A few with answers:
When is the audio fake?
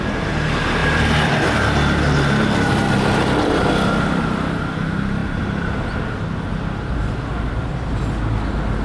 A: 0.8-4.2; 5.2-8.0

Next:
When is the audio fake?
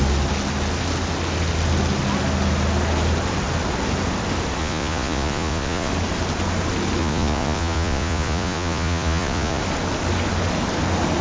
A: 4.6-5.9; 7.0-9.6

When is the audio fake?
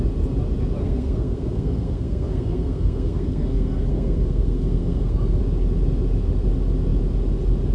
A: 0.8-5.4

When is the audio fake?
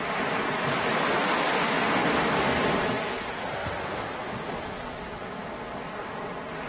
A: none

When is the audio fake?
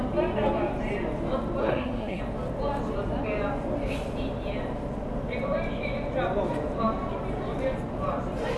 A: 1.6-2.2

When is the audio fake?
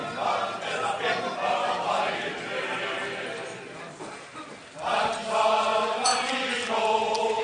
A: none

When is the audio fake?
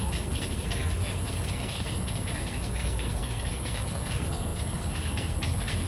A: 0.0-5.9